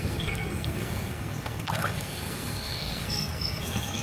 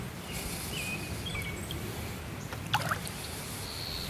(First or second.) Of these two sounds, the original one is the second